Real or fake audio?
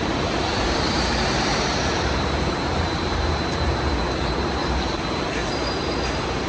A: fake